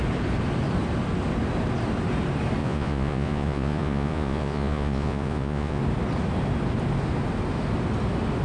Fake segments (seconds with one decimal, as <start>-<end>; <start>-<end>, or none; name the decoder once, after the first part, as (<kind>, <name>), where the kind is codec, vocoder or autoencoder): 2.6-5.8 (vocoder, Vocos)